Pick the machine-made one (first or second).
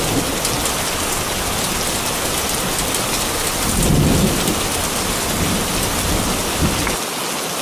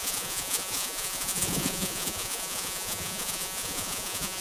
second